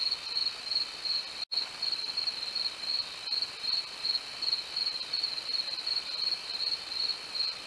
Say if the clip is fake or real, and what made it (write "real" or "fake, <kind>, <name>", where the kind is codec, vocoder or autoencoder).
real